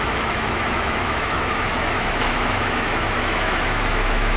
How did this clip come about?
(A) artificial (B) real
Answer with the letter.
A